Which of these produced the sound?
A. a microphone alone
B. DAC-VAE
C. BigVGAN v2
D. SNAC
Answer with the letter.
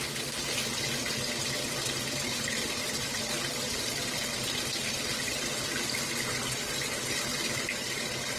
A